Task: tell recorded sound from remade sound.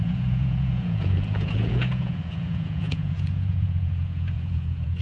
remade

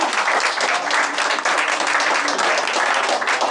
recorded